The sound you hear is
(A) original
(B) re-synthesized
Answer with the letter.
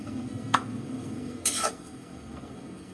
B